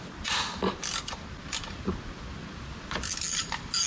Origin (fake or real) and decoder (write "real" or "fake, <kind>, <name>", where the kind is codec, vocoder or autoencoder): real